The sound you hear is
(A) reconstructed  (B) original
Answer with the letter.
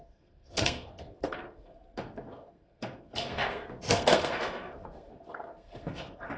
A